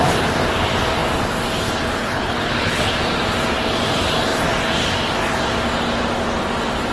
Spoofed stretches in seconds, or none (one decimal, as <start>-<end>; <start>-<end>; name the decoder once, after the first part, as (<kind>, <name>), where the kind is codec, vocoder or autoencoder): 2.0-2.9 (codec, HILCodec)

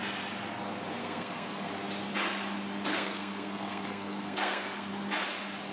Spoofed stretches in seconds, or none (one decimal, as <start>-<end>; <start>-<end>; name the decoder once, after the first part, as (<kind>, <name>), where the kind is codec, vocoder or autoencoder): 1.0-1.7 (codec, SNAC); 2.9-4.9

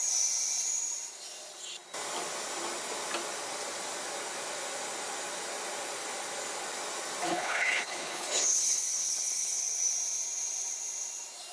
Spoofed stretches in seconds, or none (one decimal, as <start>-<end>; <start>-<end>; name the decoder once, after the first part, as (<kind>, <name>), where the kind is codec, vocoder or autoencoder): 7.3-9.6 (codec, HILCodec)

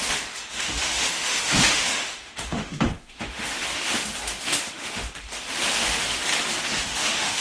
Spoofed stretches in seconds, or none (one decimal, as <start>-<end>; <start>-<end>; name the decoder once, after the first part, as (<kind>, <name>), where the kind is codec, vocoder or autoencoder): 0.0-6.3 (autoencoder, DAC-VAE); 6.8-7.4

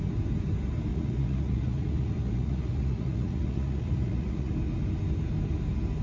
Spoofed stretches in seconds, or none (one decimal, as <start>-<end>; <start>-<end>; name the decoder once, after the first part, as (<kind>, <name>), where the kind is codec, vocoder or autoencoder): 0.9-4.5 (vocoder, Vocos)

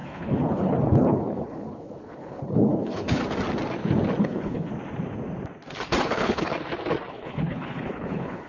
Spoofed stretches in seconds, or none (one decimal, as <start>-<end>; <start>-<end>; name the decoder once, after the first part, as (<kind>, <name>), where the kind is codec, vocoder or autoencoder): 0.0-3.2 (codec, HILCodec); 4.2-4.7; 6.0-6.5; 7.1-8.5